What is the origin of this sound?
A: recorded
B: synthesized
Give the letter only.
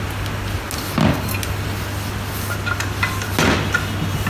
A